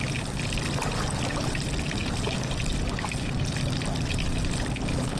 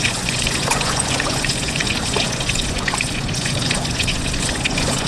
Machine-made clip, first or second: second